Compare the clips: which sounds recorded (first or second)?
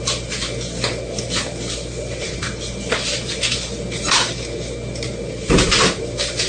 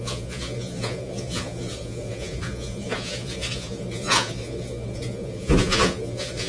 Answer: first